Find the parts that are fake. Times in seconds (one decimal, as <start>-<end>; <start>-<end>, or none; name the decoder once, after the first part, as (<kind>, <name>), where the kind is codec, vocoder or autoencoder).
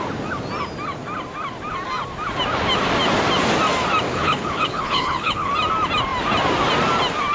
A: 4.1-5.5 (codec, HILCodec)